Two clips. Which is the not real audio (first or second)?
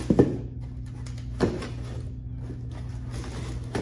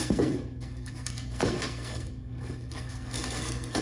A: second